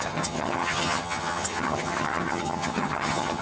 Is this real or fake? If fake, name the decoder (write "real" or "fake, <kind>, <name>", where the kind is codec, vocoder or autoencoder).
fake, vocoder, HiFi-GAN